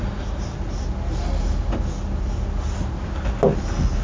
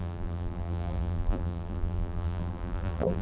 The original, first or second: first